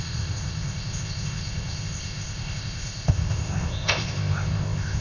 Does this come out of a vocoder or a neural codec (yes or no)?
yes